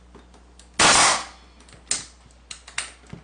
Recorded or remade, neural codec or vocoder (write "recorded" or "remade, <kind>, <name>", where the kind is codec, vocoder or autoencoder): recorded